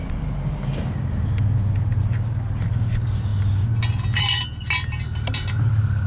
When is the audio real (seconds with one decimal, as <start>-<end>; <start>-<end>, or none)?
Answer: 0.0-6.1